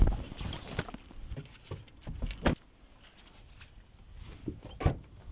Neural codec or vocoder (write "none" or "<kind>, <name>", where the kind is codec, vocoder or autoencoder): none